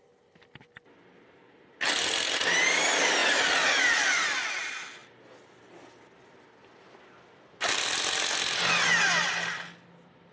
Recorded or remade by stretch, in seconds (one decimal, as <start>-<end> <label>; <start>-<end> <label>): 0.0-10.3 recorded